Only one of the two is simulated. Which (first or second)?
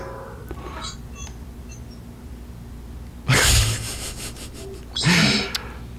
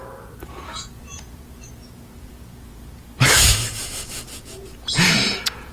second